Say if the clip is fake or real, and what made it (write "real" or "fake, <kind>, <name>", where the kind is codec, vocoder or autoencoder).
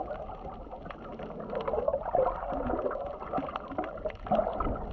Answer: real